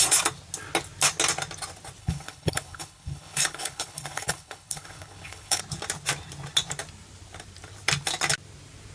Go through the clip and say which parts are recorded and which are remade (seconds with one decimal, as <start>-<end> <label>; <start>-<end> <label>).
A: 0.0-2.0 recorded; 2.0-5.6 remade; 5.6-8.9 recorded